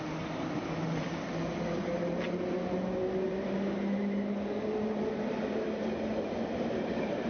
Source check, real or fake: real